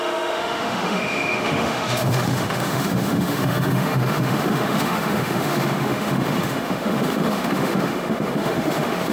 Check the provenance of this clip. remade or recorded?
remade